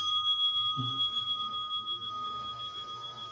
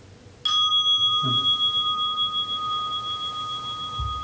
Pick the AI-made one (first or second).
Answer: first